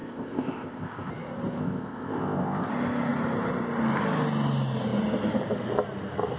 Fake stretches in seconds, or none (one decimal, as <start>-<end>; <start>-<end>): 0.0-1.1; 1.6-2.7